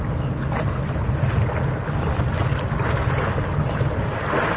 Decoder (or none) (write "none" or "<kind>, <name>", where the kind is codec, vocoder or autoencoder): none